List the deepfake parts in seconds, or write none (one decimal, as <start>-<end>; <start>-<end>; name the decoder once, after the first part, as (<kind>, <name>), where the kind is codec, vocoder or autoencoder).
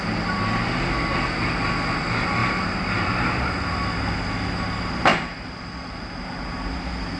2.4-3.5 (vocoder, BigVGAN v2)